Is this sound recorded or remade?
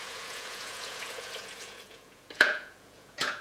remade